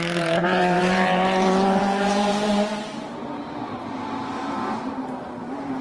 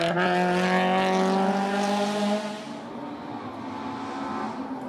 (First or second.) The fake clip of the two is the first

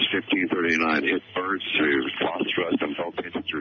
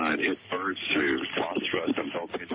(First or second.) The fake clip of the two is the second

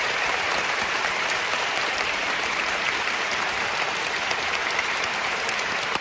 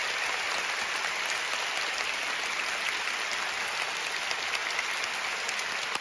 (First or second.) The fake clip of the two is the first